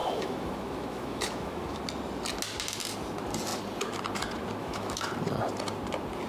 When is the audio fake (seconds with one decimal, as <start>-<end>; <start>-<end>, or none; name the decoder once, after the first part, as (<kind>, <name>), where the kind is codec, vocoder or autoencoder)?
0.0-1.8 (autoencoder, DAC-VAE); 4.6-5.1